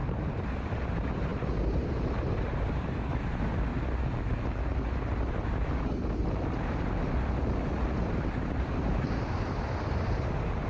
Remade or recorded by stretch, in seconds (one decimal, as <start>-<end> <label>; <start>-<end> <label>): 0.0-3.7 remade; 3.7-8.0 recorded; 8.0-10.7 remade